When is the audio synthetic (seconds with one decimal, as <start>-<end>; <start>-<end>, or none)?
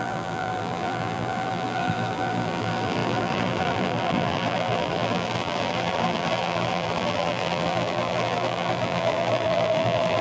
0.0-10.2